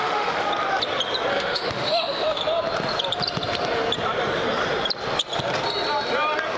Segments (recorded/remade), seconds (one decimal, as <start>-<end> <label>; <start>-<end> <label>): 0.0-0.5 remade; 0.5-1.3 recorded; 1.3-2.4 remade; 2.4-6.6 recorded